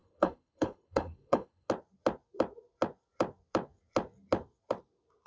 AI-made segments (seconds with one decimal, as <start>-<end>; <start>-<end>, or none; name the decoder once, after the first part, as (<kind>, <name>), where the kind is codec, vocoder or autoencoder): 0.0-1.7 (codec, HILCodec)